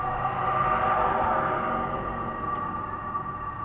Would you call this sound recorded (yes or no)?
yes